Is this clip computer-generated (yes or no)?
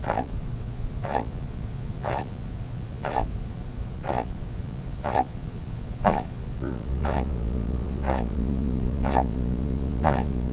yes